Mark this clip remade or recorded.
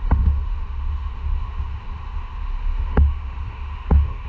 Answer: remade